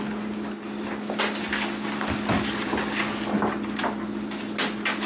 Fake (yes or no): no